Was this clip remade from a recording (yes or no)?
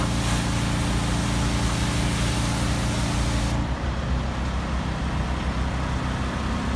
no